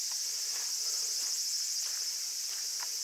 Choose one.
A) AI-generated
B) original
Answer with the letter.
B